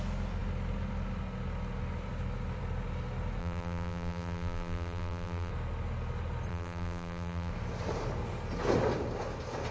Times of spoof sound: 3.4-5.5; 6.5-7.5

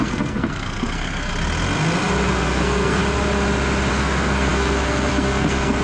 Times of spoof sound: 0.0-1.3; 2.3-3.0; 3.9-5.8

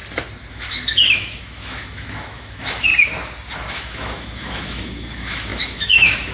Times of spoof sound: 0.5-2.9; 3.5-6.3

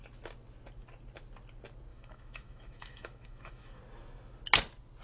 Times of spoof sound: 1.9-3.8

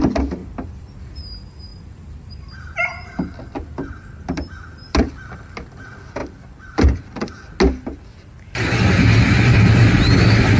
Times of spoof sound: 0.4-1.0; 1.7-5.1; 6.2-7.3

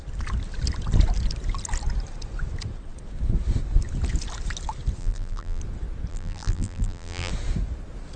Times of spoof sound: 5.0-5.6; 6.1-7.3

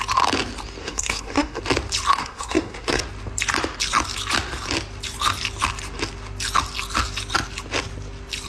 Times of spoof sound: 0.8-1.6; 2.2-3.0